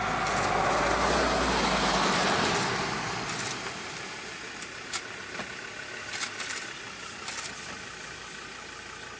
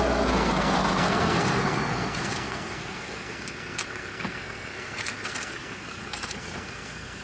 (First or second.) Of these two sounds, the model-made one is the second